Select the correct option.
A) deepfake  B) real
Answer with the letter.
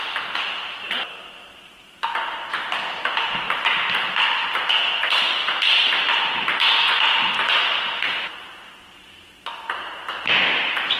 B